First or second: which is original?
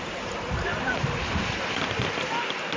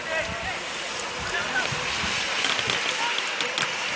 second